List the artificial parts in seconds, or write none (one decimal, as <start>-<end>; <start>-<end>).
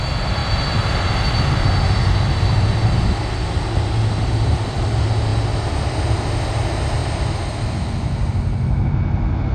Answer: none